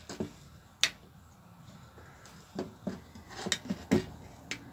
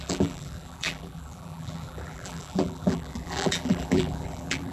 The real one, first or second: first